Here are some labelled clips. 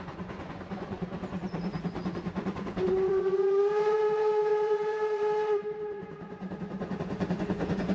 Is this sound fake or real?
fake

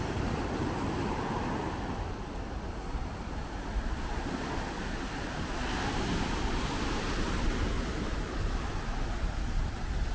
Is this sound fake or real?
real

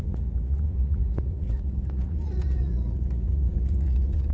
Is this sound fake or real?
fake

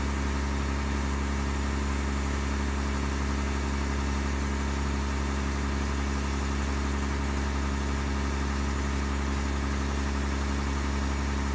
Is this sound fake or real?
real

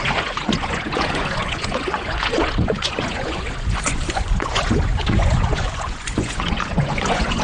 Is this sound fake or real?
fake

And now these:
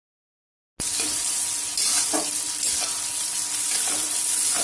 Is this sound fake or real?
real